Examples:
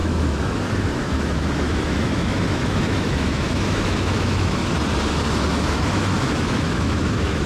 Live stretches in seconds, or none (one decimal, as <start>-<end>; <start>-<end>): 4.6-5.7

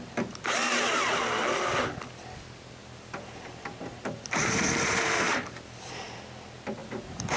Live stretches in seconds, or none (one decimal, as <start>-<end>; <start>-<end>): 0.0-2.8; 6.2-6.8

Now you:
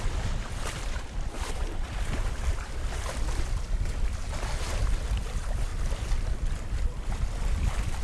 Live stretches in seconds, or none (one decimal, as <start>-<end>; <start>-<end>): 5.7-7.1

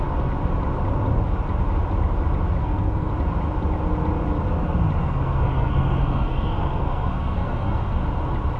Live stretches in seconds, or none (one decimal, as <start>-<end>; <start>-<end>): 0.0-2.6; 3.1-5.0; 8.0-8.6